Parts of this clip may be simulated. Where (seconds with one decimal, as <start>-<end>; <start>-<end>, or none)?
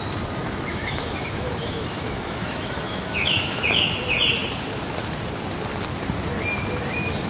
0.4-3.9